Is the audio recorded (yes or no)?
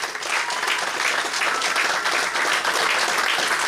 yes